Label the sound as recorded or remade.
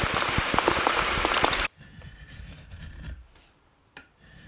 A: remade